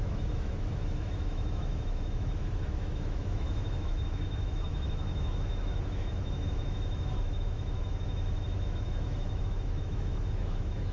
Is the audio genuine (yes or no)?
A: no